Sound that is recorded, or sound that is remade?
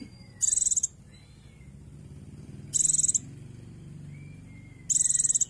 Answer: recorded